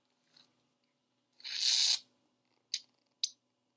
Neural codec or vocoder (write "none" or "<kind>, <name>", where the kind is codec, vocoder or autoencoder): none